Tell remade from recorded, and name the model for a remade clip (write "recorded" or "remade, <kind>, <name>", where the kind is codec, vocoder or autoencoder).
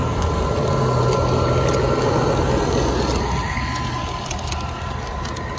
recorded